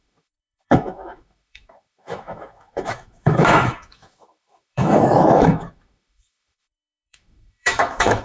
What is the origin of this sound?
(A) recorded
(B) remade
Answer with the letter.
B